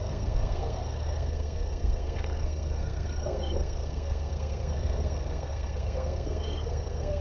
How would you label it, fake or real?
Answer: fake